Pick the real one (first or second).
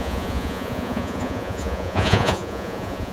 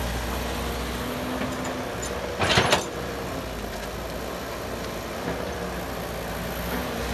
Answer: second